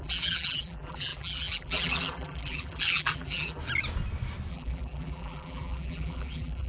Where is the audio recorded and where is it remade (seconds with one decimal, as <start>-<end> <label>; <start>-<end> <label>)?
0.0-3.6 remade; 3.6-4.5 recorded; 4.5-6.7 remade